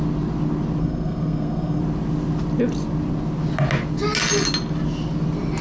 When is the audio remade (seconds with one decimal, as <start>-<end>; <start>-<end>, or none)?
0.8-1.8